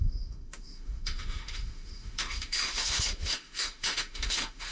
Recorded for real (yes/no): no